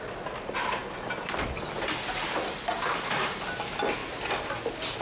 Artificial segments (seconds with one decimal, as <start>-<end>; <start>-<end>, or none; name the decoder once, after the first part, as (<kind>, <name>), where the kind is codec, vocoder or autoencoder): none